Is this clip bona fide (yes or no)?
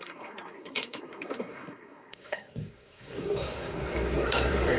no